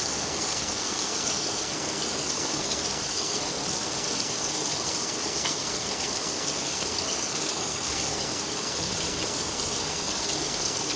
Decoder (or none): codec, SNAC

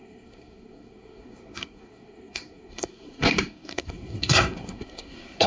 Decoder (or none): codec, SNAC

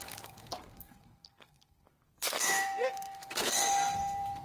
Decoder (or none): codec, SNAC